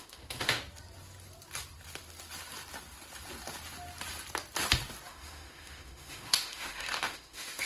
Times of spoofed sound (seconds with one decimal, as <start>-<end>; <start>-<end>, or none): 0.0-0.6; 5.1-7.7